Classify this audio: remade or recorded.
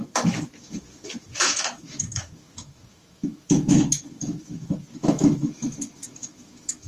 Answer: remade